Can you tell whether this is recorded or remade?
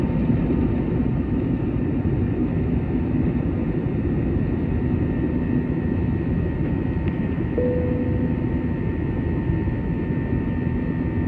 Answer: recorded